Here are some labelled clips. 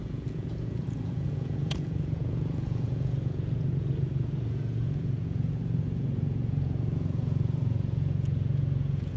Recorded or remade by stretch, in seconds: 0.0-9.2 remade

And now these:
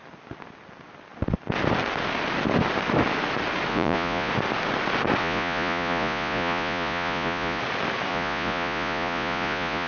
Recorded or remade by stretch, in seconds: 0.0-3.7 recorded; 3.7-4.3 remade; 4.3-5.2 recorded; 5.2-7.6 remade; 7.6-8.1 recorded; 8.1-9.9 remade

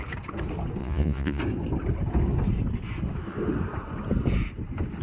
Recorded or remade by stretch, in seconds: 0.0-0.8 recorded; 0.8-1.4 remade; 1.4-5.0 recorded

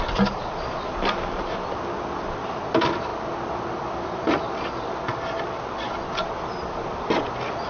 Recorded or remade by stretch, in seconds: 0.0-7.7 recorded

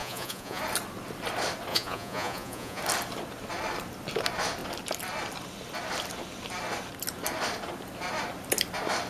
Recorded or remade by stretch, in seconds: 0.0-0.6 remade; 0.6-1.7 recorded; 1.7-2.8 remade; 2.8-9.1 recorded

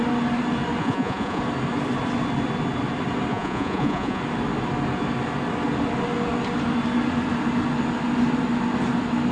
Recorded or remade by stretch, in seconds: 0.0-0.8 recorded; 0.8-1.4 remade; 1.4-3.3 recorded; 3.3-4.2 remade; 4.2-9.3 recorded

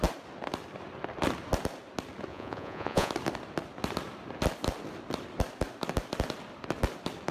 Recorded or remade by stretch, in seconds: 0.0-2.3 recorded; 2.3-3.1 remade; 3.1-7.3 recorded

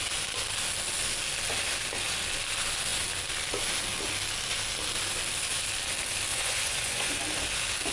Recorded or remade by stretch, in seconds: 0.0-6.3 recorded; 6.3-7.2 remade; 7.2-7.9 recorded